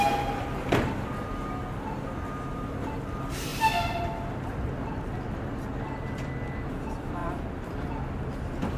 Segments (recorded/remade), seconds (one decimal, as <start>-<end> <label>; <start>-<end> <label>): 0.0-3.5 recorded; 3.5-4.0 remade; 4.0-7.2 recorded; 7.2-8.0 remade; 8.0-8.8 recorded